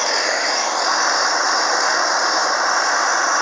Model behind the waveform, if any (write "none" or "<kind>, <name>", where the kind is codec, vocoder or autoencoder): none